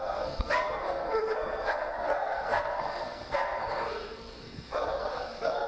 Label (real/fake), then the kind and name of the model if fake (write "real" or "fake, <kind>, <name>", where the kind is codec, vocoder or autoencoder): fake, codec, SNAC